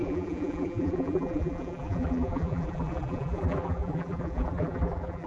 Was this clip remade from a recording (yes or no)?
yes